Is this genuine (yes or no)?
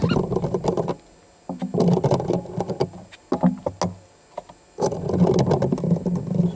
yes